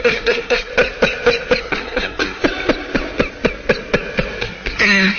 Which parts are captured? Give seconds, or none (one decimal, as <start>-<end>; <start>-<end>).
0.7-1.6; 2.4-4.4